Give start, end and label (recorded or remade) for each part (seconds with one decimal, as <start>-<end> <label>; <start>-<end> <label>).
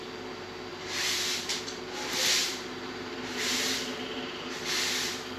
0.0-0.7 recorded; 0.7-1.8 remade; 1.8-2.4 recorded; 2.4-4.5 remade; 4.5-5.4 recorded